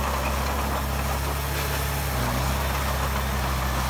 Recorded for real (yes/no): yes